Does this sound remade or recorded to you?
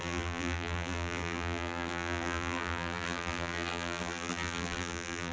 remade